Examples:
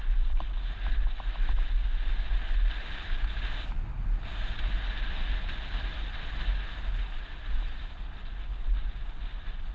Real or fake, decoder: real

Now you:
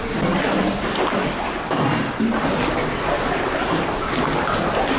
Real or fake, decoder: real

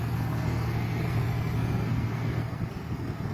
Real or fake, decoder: fake, codec, SNAC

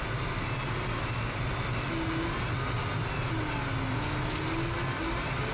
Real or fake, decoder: real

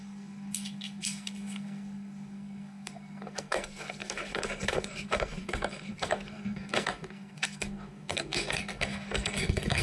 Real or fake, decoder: fake, codec, SNAC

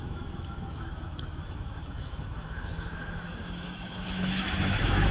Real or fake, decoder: fake, autoencoder, DAC-VAE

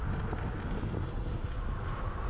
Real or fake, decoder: real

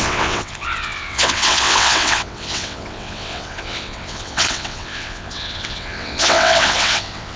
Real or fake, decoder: fake, vocoder, WaveNeXt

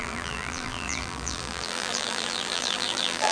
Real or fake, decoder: fake, vocoder, BigVGAN v2